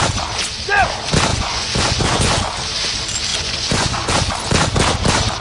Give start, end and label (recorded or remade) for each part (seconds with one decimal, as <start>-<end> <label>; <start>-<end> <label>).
0.0-1.3 recorded; 1.3-2.4 remade; 2.4-3.3 recorded; 3.3-4.1 remade; 4.1-5.4 recorded